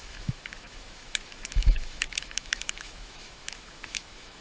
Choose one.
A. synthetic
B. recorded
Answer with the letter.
A